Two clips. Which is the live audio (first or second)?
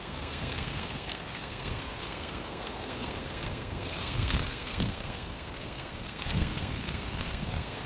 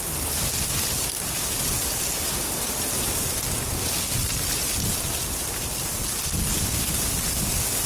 second